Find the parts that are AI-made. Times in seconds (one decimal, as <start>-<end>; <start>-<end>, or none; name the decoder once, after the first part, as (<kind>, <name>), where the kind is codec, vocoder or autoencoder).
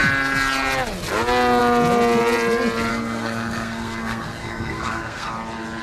2.9-5.3 (codec, SNAC)